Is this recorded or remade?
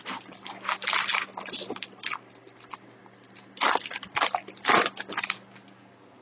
recorded